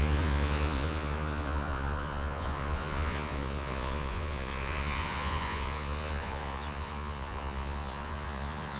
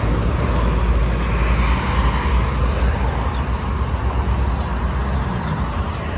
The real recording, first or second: second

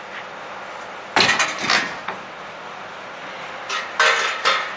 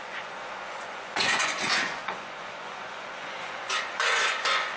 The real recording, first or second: first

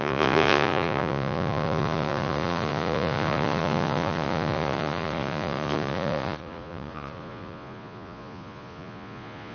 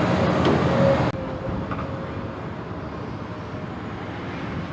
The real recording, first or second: second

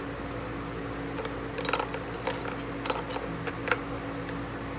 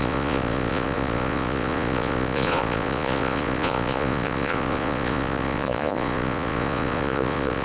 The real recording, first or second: first